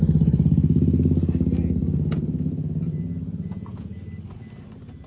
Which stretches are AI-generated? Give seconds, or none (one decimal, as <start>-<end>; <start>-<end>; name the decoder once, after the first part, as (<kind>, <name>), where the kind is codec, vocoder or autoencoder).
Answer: 1.8-4.0 (vocoder, Vocos)